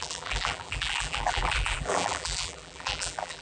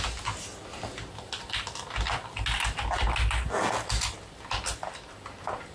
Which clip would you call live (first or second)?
second